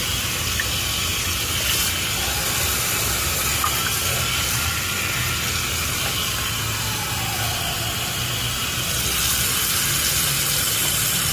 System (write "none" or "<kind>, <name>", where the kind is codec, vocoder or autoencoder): none